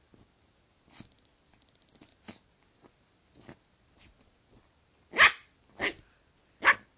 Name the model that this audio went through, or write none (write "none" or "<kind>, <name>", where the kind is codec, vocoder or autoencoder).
none